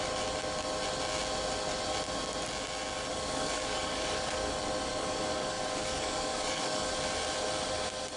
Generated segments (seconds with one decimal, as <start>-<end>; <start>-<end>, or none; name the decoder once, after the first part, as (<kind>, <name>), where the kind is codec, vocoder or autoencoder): 3.1-4.5 (codec, DAC); 4.9-6.9